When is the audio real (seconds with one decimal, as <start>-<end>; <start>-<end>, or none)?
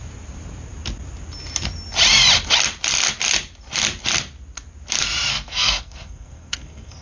0.0-5.3